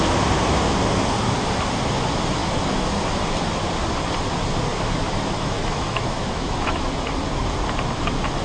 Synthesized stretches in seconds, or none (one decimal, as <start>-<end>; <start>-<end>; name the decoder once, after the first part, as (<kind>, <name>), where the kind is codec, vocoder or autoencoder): 4.7-6.9 (autoencoder, DAC-VAE)